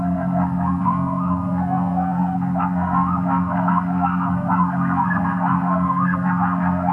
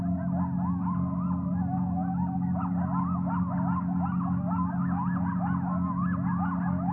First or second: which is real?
second